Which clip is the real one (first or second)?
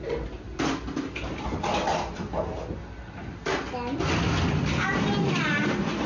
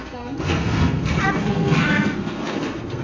first